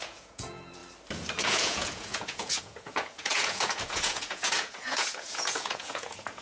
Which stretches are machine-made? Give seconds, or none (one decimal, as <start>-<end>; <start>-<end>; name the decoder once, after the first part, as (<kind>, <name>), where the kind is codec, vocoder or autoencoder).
0.0-0.8 (vocoder, Vocos); 1.4-6.4